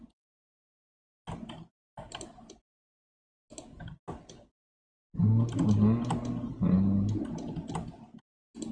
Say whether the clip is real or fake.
real